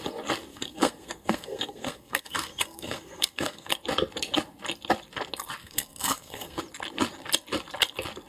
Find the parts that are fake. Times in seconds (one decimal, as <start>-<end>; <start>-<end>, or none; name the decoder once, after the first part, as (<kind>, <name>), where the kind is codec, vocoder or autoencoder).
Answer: 0.5-3.7 (codec, SNAC); 5.6-6.6